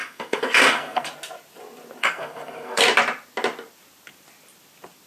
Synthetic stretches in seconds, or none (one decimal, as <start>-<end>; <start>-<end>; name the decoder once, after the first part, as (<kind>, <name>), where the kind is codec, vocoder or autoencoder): 0.0-1.1 (codec, SNAC); 2.0-2.8